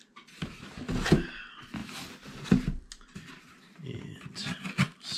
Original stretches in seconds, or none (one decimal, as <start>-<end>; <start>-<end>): 0.0-5.2